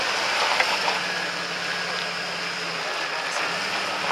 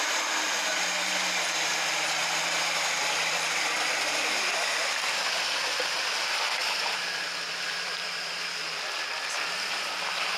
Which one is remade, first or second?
second